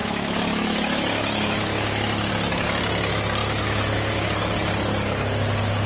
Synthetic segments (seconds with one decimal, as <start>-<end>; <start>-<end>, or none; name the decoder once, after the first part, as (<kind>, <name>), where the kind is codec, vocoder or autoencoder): 0.0-2.3 (autoencoder, DAC-VAE); 3.4-4.2

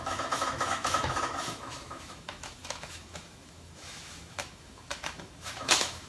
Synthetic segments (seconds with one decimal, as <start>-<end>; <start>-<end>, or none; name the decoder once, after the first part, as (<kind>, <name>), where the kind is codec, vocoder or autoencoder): 0.0-6.1 (autoencoder, DAC-VAE)

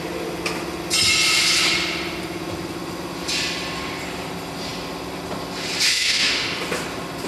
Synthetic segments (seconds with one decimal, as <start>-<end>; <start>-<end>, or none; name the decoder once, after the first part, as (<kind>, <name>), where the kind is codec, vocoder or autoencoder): 5.9-6.6 (autoencoder, DAC-VAE)

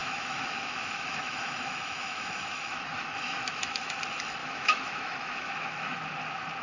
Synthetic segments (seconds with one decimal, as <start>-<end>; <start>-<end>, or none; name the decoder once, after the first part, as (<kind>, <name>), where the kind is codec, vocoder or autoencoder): 0.0-4.0 (autoencoder, DAC-VAE); 4.4-6.0

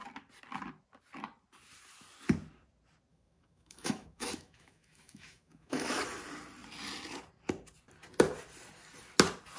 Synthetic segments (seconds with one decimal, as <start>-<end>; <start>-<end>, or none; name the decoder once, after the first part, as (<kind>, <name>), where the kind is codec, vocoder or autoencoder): 3.1-6.0 (autoencoder, DAC-VAE)

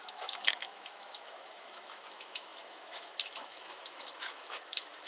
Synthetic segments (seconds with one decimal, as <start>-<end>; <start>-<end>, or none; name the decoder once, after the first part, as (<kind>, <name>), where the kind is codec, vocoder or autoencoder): 0.0-5.1 (autoencoder, DAC-VAE)

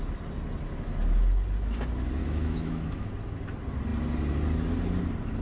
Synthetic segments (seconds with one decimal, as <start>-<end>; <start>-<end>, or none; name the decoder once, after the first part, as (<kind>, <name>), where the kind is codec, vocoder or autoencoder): 2.2-3.1 (autoencoder, DAC-VAE)

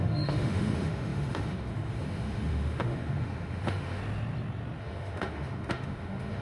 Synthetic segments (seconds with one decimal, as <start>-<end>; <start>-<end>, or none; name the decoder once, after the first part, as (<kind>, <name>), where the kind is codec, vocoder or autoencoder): 0.0-4.0 (autoencoder, DAC-VAE); 4.8-6.4